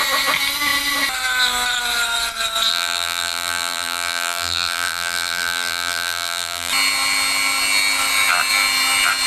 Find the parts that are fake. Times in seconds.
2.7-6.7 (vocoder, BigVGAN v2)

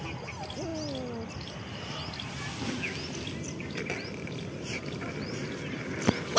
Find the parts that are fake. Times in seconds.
none

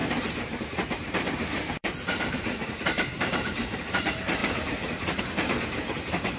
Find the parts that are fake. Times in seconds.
0.0-3.8 (vocoder, BigVGAN v2); 4.4-5.2

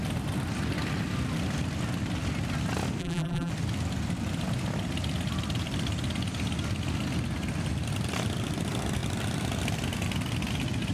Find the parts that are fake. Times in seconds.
3.0-3.5 (vocoder, BigVGAN v2)

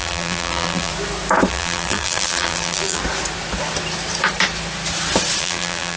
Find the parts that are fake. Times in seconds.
0.0-0.9 (vocoder, BigVGAN v2); 1.5-3.0; 5.4-6.0

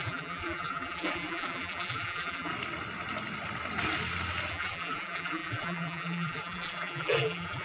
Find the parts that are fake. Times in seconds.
0.0-2.5 (vocoder, BigVGAN v2); 4.5-7.6

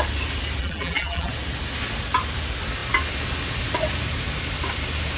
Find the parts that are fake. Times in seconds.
0.6-1.3 (vocoder, BigVGAN v2)